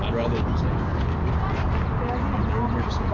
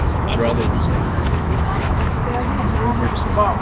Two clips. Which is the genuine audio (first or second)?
first